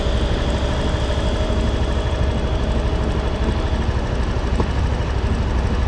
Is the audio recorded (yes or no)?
yes